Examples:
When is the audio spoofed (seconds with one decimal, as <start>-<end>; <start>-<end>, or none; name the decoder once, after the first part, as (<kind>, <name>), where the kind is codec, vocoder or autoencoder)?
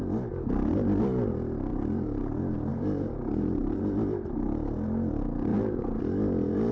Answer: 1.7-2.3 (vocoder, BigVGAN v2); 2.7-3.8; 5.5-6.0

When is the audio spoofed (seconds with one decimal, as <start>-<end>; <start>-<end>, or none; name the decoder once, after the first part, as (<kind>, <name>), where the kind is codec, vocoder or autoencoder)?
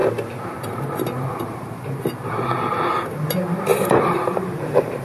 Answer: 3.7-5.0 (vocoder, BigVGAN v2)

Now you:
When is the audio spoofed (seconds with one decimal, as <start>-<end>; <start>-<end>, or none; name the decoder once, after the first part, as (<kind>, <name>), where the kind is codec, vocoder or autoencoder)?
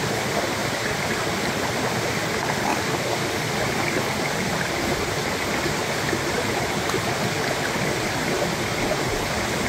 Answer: 0.6-2.2 (vocoder, BigVGAN v2); 2.7-5.5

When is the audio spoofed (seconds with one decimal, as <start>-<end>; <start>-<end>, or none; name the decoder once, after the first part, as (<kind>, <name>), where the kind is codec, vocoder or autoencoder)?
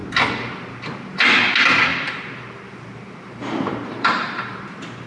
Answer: 1.9-5.1 (vocoder, BigVGAN v2)